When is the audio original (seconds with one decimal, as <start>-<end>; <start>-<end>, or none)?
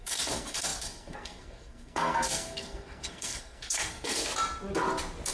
4.3-5.3